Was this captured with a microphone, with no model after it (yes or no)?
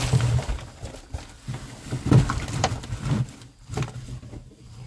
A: no